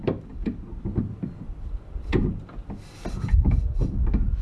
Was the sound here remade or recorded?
recorded